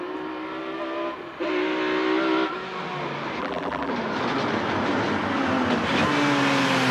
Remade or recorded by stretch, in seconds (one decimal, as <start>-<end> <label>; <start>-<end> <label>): 0.0-3.4 recorded; 3.4-3.9 remade; 3.9-6.9 recorded